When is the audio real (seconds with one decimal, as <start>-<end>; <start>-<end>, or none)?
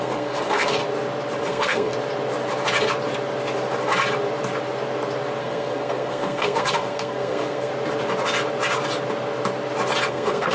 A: 0.8-1.4; 1.9-5.4; 7.7-10.1